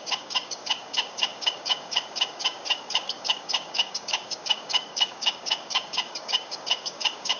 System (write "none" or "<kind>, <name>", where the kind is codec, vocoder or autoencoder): codec, DAC